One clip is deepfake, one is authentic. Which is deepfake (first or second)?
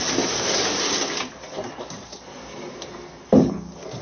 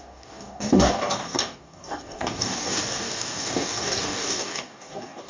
second